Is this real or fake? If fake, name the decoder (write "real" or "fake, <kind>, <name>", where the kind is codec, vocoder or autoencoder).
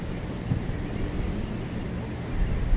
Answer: real